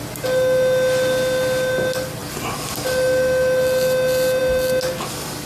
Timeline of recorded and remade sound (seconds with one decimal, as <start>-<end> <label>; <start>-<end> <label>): 0.0-5.5 recorded